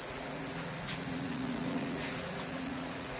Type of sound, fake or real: fake